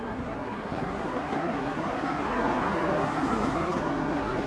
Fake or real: fake